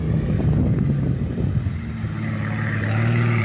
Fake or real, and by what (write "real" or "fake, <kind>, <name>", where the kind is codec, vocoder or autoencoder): real